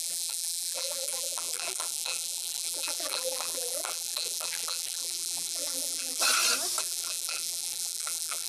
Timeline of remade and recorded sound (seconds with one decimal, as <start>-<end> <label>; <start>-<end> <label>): 0.0-6.2 remade; 6.2-6.8 recorded; 6.8-8.5 remade